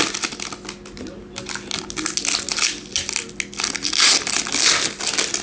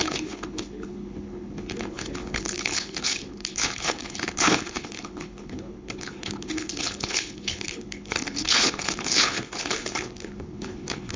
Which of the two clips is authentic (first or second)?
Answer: first